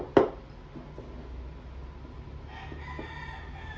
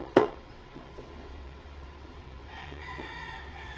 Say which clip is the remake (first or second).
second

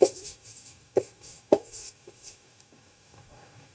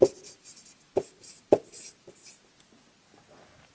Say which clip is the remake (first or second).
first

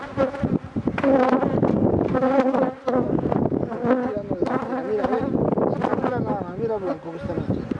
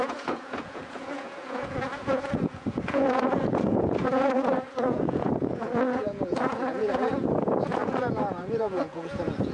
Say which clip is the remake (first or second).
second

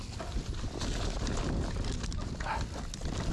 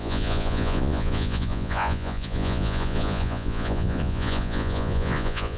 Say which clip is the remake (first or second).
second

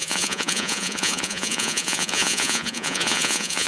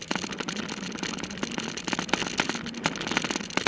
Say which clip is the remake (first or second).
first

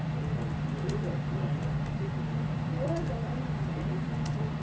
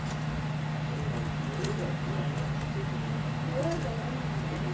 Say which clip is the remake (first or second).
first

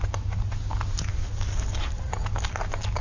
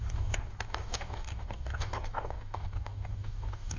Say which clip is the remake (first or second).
second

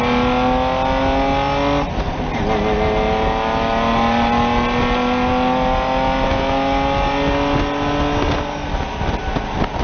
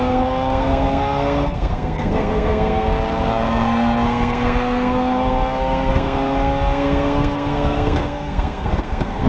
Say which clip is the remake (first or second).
second